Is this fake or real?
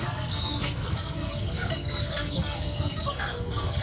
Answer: fake